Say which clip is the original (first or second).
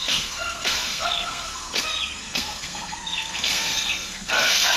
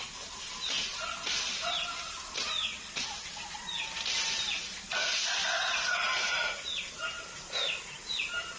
second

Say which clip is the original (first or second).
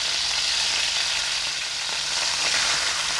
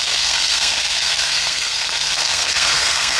first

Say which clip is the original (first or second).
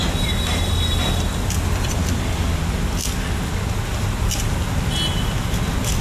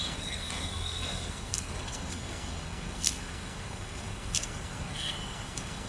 first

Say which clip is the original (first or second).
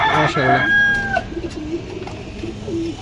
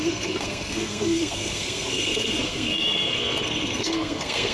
first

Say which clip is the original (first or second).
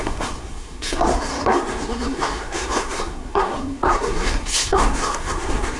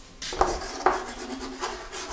second